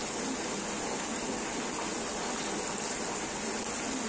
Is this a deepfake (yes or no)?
no